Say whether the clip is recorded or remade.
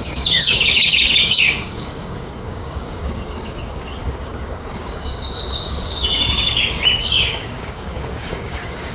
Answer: remade